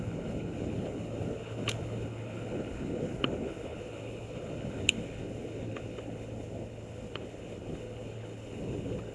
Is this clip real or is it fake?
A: fake